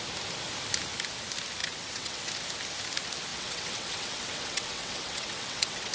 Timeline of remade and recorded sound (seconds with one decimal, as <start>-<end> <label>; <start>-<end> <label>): 0.0-1.6 recorded; 1.6-2.3 remade; 2.3-3.3 recorded; 3.3-5.9 remade